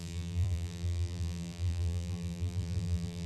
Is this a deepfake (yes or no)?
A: yes